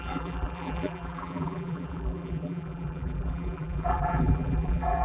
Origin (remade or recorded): remade